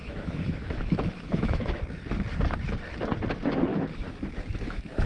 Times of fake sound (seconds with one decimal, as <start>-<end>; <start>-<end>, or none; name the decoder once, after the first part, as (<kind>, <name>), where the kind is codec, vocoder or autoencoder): 0.0-1.8 (autoencoder, DAC-VAE); 3.7-5.1